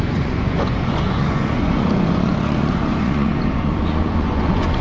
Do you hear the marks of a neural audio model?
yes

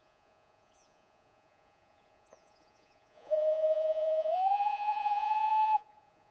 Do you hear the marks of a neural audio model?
yes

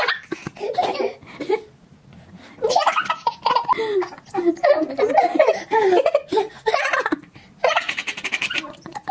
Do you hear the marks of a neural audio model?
no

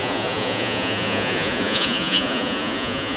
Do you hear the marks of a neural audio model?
yes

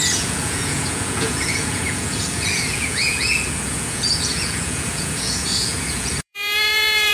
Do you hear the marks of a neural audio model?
yes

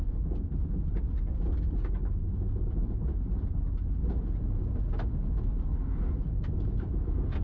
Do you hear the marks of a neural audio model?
no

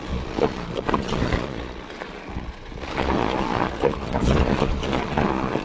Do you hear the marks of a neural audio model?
yes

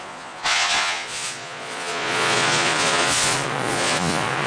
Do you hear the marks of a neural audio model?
yes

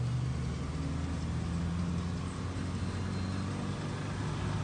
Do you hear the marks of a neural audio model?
no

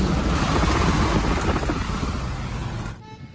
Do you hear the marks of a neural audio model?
no